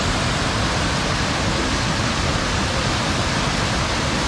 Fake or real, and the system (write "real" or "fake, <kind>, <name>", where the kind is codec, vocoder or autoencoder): real